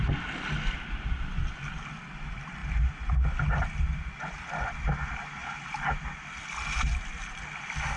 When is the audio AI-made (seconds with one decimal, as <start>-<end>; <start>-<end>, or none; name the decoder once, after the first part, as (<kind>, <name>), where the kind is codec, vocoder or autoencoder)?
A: none

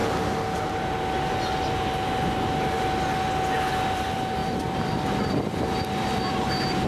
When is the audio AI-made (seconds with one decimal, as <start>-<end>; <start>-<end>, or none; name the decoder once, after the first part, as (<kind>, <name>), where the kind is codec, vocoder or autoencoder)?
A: 3.7-6.9 (vocoder, BigVGAN v2)

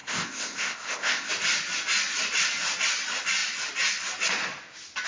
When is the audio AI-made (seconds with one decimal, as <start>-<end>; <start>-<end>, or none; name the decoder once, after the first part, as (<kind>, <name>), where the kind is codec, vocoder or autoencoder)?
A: 0.0-1.3 (codec, ZipCodec)

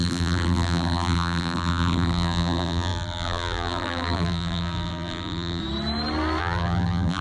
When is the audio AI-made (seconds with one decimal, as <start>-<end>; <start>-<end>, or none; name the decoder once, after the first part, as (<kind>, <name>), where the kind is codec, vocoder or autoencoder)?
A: 0.0-5.6 (vocoder, BigVGAN v2); 6.4-7.2

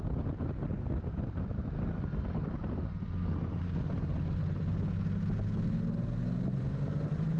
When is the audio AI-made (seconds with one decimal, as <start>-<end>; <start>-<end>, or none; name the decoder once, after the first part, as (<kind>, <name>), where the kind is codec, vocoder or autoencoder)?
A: none